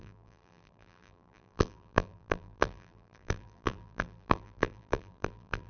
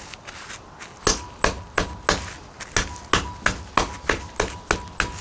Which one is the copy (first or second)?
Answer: first